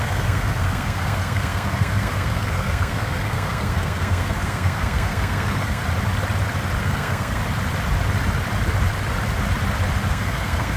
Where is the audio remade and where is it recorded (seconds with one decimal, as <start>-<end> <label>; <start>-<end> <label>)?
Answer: 0.0-5.8 remade; 5.8-6.8 recorded; 6.8-7.4 remade; 7.4-10.1 recorded; 10.1-10.8 remade